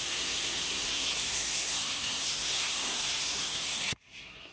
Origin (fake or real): fake